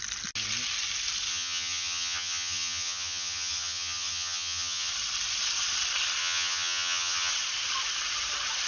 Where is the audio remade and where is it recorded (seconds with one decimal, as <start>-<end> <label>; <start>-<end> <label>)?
0.0-1.3 recorded; 1.3-4.9 remade; 4.9-6.2 recorded; 6.2-7.3 remade; 7.3-8.7 recorded